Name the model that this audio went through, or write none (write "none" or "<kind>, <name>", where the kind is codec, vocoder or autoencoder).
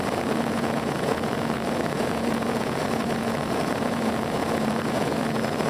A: vocoder, Vocos